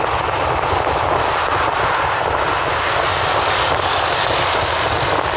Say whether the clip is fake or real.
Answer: real